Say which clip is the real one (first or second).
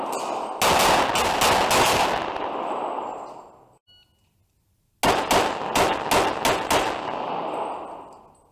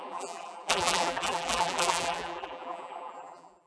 first